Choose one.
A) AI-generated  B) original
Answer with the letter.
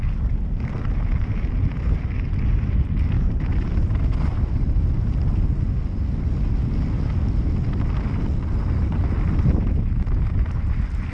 B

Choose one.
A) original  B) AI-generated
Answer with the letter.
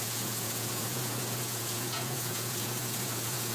B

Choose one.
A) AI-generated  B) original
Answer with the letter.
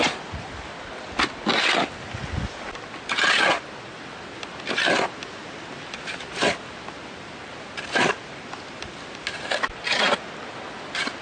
B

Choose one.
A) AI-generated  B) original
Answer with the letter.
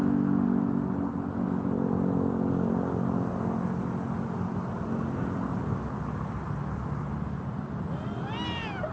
B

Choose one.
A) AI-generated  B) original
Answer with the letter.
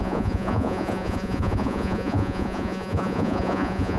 A